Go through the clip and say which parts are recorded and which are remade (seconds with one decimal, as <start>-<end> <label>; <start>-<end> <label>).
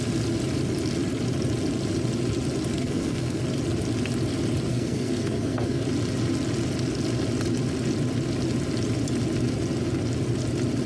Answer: 0.0-2.7 recorded; 2.7-3.4 remade; 3.4-4.7 recorded; 4.7-5.8 remade; 5.8-10.9 recorded